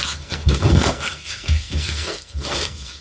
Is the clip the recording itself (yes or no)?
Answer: no